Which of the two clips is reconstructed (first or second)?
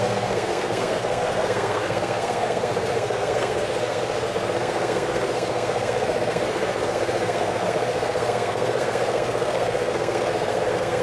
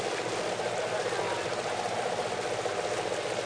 first